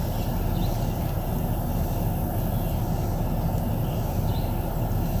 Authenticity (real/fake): real